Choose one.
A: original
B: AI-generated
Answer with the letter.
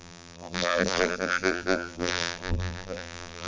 B